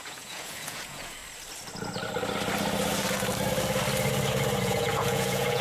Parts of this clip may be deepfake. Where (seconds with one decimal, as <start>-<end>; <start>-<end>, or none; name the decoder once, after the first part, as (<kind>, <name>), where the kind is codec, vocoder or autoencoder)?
0.0-1.2 (vocoder, Vocos); 4.6-5.6